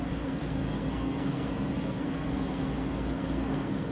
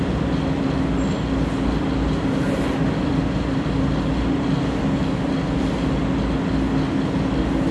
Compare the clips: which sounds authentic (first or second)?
second